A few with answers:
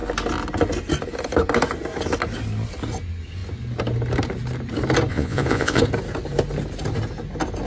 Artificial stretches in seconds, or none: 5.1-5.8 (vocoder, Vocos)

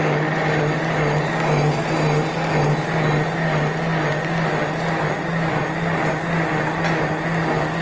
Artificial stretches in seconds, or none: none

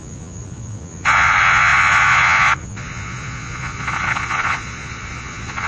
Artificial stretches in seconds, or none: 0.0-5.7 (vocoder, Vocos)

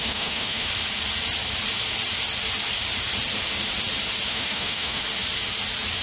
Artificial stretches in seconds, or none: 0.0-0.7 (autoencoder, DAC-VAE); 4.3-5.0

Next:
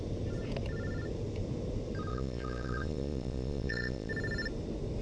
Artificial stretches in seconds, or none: 2.1-4.1 (vocoder, Vocos)